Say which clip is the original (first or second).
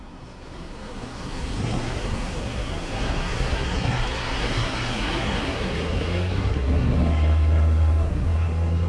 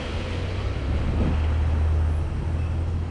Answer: second